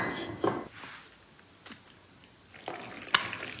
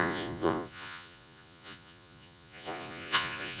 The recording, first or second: first